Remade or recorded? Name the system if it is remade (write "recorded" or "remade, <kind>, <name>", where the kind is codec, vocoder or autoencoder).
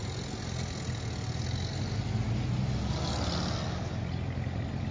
recorded